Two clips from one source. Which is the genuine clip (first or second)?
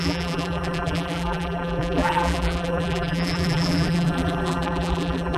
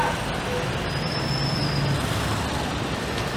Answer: second